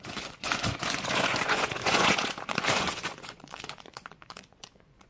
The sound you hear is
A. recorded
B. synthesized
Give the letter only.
B